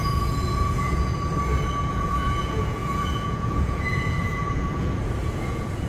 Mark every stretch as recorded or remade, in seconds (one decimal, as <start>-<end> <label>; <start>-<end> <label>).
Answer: 0.0-1.1 remade; 1.1-1.9 recorded; 1.9-5.9 remade